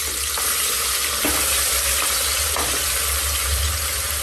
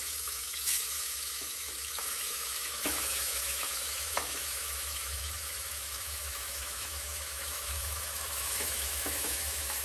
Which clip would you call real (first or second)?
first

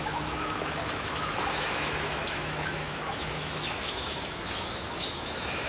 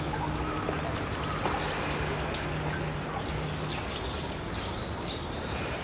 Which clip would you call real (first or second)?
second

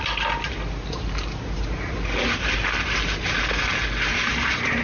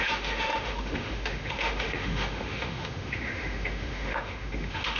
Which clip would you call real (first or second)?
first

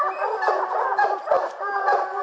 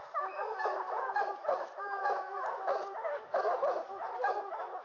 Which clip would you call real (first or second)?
first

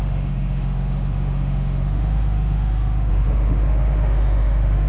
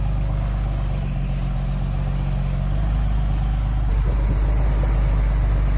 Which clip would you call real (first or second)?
second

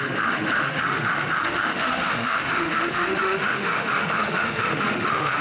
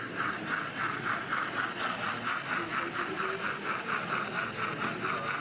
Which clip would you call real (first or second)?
second